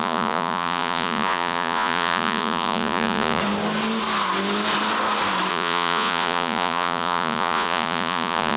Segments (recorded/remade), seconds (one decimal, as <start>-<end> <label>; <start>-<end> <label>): 0.0-3.4 remade; 3.4-5.5 recorded; 5.5-8.6 remade